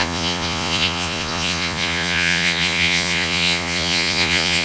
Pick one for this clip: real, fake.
fake